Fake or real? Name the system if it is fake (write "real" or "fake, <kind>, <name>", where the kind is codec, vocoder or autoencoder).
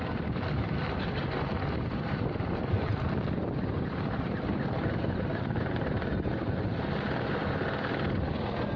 fake, vocoder, BigVGAN v2